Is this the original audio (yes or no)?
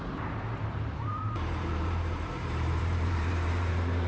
no